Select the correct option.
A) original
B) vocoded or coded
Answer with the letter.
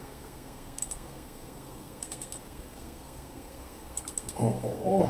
B